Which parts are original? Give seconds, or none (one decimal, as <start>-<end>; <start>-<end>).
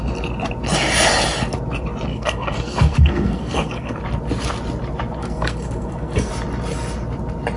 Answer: 0.0-2.1; 4.0-5.2; 6.3-7.6